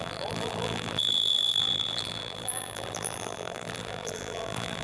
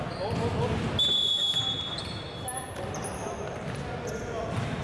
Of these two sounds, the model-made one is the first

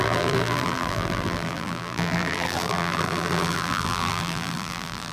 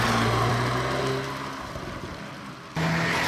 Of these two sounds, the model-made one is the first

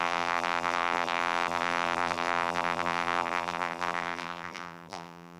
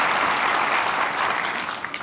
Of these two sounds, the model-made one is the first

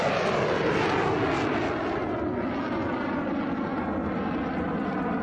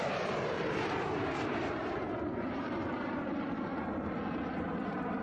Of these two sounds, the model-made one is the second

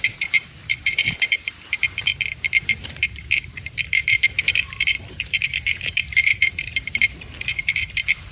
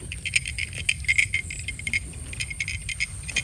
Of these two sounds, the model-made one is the first